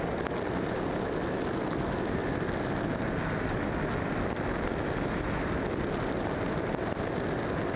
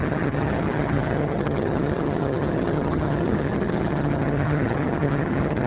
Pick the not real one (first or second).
second